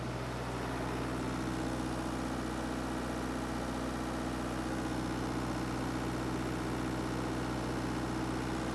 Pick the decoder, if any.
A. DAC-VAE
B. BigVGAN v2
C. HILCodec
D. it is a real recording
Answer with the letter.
D